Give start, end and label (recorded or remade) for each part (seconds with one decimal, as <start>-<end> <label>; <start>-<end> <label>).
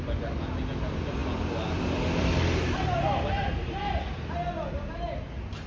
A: 0.0-5.7 recorded